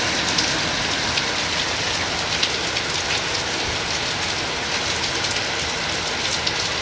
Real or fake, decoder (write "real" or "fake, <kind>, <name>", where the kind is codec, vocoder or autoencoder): real